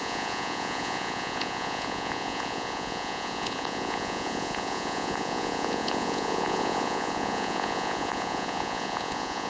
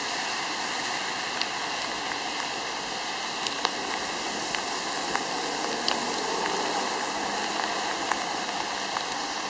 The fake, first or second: first